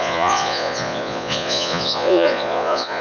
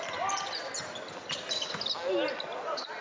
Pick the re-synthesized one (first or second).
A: first